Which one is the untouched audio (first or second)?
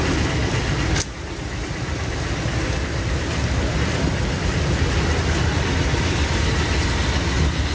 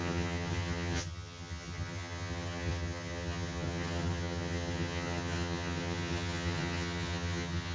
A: first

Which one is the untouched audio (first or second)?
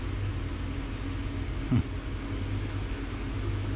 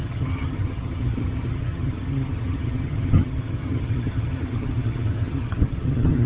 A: first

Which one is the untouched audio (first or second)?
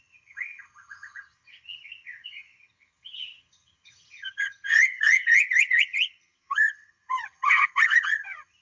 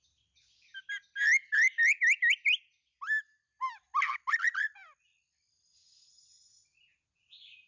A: second